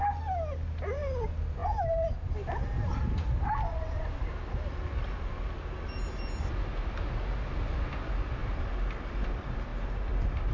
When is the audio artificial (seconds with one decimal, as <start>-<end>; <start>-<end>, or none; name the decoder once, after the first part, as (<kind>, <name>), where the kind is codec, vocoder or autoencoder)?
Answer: none